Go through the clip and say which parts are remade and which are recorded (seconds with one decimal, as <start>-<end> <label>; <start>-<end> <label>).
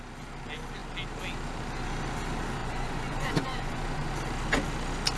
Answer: 0.0-2.6 recorded; 2.6-4.1 remade; 4.1-5.2 recorded